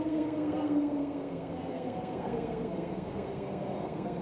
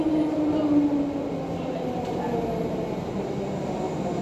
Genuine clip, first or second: second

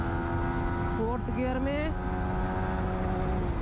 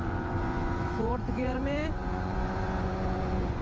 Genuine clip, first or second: first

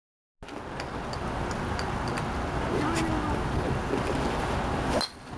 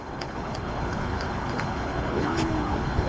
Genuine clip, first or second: first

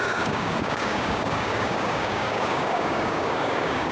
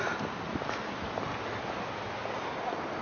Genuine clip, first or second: second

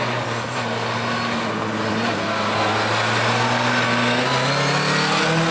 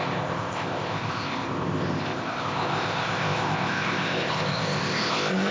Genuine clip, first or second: first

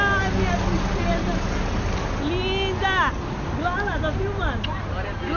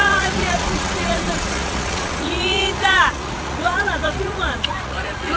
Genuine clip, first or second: first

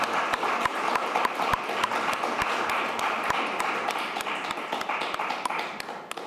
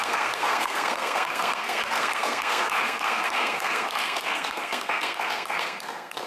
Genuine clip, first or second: first